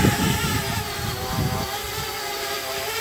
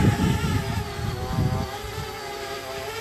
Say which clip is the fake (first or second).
first